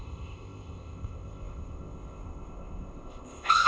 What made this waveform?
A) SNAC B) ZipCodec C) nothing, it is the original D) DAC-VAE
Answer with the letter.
B